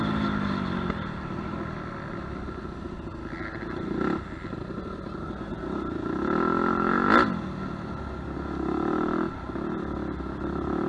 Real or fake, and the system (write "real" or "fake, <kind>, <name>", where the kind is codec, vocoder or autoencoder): real